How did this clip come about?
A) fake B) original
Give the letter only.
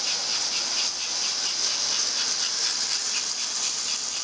B